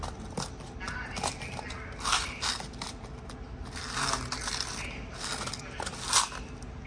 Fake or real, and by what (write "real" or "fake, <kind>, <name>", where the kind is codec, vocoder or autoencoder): real